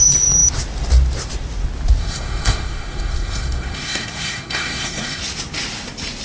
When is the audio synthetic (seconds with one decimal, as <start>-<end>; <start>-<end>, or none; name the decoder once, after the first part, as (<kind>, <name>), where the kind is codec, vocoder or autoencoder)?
2.0-5.2 (codec, SNAC)